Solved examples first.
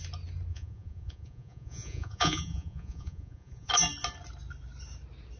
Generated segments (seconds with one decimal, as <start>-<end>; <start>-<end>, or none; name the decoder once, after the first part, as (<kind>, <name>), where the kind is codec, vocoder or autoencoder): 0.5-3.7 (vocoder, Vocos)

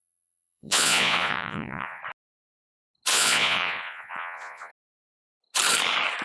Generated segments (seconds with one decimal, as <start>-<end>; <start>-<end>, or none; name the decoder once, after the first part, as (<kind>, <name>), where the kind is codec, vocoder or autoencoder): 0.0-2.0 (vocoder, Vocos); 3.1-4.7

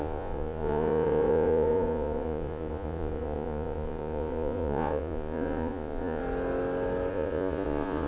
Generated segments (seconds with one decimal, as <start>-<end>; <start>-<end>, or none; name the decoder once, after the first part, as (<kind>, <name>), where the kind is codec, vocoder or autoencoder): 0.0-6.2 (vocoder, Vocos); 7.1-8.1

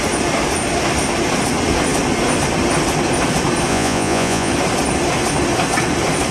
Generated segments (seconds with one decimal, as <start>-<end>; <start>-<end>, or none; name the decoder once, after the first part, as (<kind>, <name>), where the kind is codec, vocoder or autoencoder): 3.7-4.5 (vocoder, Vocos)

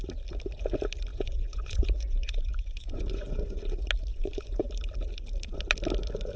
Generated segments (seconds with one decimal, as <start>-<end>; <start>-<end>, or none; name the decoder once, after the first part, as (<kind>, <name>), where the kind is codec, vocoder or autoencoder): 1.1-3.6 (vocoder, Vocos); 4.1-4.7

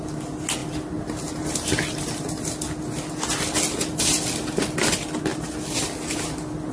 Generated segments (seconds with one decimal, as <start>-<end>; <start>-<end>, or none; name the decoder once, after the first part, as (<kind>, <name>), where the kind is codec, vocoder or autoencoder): none

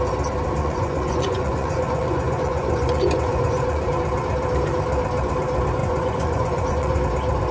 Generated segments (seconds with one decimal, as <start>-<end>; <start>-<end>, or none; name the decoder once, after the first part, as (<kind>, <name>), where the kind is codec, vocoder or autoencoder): 0.6-3.9 (vocoder, Vocos); 5.8-7.0

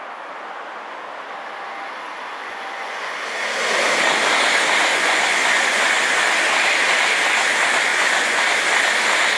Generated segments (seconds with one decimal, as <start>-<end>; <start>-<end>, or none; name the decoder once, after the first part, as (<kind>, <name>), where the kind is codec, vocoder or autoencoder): 2.4-3.1 (vocoder, Vocos); 4.9-6.2; 7.9-8.4